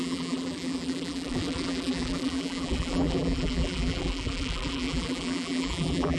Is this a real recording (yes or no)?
no